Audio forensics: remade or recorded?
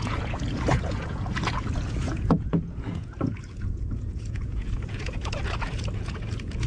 remade